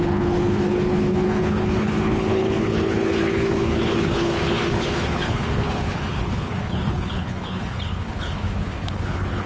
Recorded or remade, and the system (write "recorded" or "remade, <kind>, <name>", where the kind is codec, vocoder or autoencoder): remade, codec, HILCodec